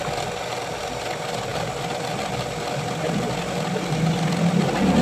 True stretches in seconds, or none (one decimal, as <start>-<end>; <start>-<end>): 0.0-5.0